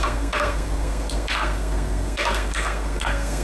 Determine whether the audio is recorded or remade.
remade